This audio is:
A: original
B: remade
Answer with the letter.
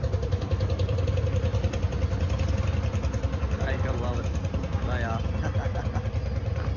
A